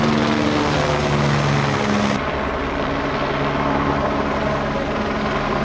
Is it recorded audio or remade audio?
recorded